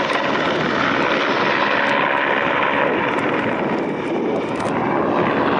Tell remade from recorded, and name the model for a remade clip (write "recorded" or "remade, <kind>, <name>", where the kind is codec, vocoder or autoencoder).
recorded